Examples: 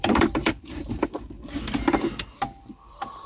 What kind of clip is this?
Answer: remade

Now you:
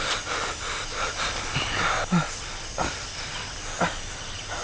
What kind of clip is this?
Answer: recorded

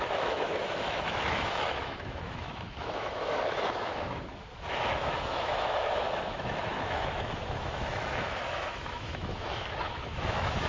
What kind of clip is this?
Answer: remade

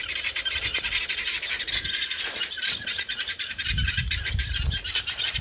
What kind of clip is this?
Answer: remade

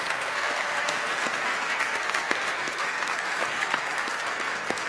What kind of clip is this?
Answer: remade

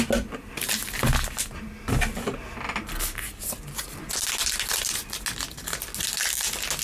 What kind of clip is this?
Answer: recorded